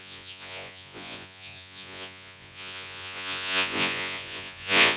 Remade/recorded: remade